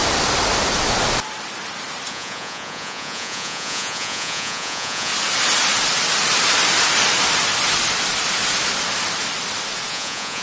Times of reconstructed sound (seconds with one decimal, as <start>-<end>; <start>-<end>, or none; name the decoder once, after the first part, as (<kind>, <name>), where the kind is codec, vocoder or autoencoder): 2.1-5.1 (vocoder, Vocos); 9.9-10.4